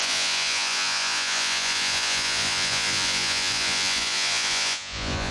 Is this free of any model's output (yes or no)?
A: no